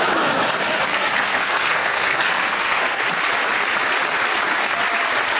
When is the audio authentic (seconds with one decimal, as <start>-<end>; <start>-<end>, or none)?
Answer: 0.0-0.9; 3.0-5.4